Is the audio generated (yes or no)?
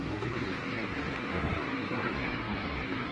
yes